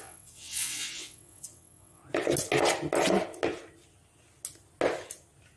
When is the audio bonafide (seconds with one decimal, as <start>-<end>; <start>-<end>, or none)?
2.0-5.6